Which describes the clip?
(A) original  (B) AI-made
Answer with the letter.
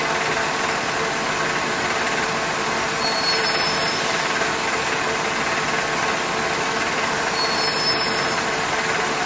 A